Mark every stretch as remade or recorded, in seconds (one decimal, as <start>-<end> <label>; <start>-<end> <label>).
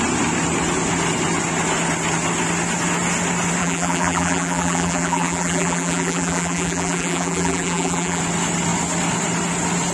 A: 0.0-3.6 recorded; 3.6-8.2 remade; 8.2-9.9 recorded